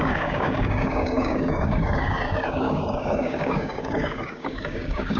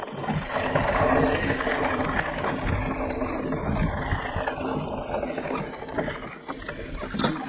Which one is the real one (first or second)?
second